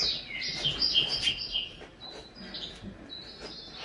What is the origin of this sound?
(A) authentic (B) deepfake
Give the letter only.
A